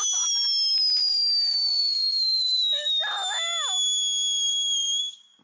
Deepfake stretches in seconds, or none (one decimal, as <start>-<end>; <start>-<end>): 1.8-2.9; 4.5-5.4